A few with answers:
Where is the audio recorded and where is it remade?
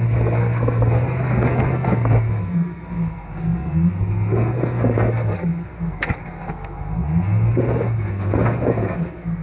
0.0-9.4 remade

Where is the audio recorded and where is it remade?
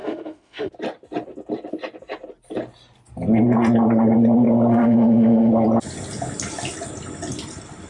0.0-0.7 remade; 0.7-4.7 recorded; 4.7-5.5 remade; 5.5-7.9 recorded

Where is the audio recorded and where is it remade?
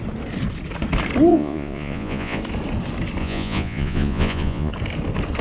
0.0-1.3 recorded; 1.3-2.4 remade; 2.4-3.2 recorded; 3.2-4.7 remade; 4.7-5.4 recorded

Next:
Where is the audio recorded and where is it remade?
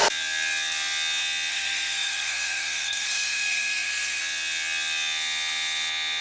0.0-1.5 recorded; 1.5-4.2 remade; 4.2-6.2 recorded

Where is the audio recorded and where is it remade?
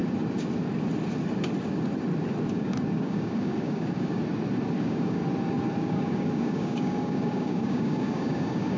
0.0-2.5 recorded; 2.5-4.2 remade; 4.2-4.8 recorded; 4.8-5.2 remade; 5.2-5.8 recorded; 5.8-8.8 remade